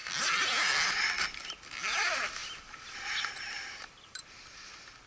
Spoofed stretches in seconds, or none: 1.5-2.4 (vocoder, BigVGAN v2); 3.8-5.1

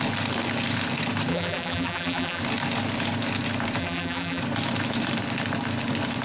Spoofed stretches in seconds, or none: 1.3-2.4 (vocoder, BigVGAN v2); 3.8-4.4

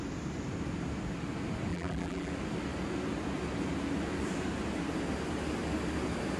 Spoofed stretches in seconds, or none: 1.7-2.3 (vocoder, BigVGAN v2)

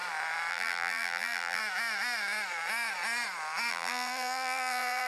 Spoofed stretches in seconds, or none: 0.5-1.6 (vocoder, BigVGAN v2); 3.7-5.1

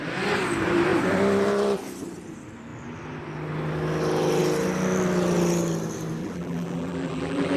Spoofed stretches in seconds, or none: 6.2-7.6 (vocoder, BigVGAN v2)